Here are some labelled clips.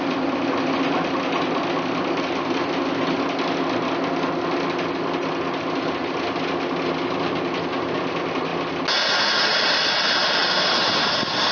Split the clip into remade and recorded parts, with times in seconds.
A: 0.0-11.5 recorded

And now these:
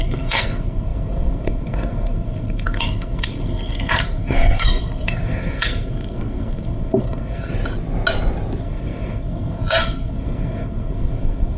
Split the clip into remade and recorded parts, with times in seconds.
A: 0.0-7.5 remade; 7.5-8.6 recorded; 8.6-11.6 remade

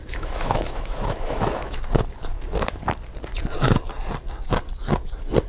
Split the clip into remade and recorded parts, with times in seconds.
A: 0.0-1.8 remade; 1.8-5.5 recorded